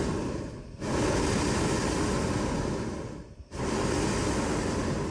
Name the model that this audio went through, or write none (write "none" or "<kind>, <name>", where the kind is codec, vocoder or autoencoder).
none